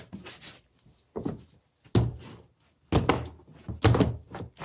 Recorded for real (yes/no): yes